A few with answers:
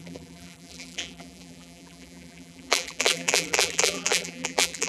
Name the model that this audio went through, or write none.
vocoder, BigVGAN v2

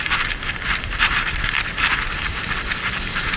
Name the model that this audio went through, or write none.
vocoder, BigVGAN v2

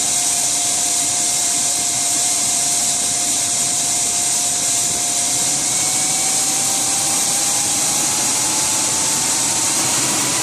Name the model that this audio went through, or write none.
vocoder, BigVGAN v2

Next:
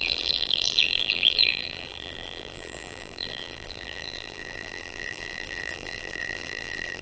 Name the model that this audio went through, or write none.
vocoder, BigVGAN v2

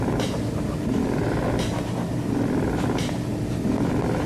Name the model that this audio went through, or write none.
none